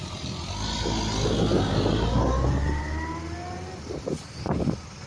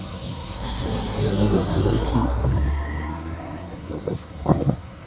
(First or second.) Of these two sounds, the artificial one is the second